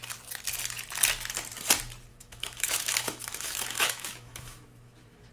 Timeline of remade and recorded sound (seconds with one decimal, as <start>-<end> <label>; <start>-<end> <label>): 0.0-2.1 recorded; 2.1-5.3 remade

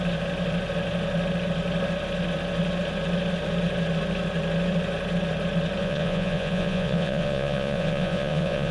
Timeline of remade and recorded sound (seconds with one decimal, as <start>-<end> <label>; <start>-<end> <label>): 0.0-5.8 recorded; 5.8-8.7 remade

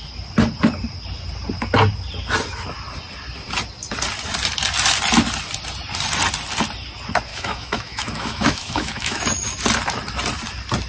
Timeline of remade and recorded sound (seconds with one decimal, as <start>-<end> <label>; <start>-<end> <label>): 0.0-7.3 recorded; 7.3-9.2 remade; 9.2-10.9 recorded

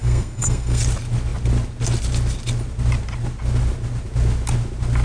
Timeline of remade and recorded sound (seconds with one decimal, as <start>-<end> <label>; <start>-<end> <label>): 0.0-0.8 remade; 0.8-5.0 recorded

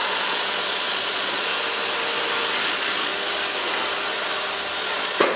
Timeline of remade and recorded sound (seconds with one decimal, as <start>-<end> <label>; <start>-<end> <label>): 0.0-1.5 remade; 1.5-2.7 recorded; 2.7-3.1 remade; 3.1-4.8 recorded; 4.8-5.4 remade

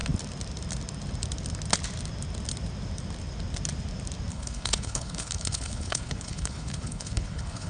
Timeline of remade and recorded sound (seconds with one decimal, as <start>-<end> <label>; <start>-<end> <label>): 0.0-4.3 recorded; 4.3-7.7 remade